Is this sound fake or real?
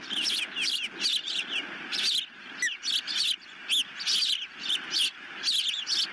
real